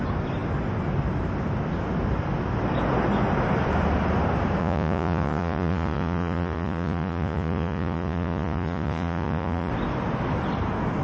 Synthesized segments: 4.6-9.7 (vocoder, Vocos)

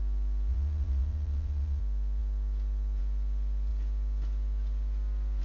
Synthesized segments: 0.5-1.8 (vocoder, Vocos)